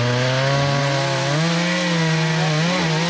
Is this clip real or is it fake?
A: real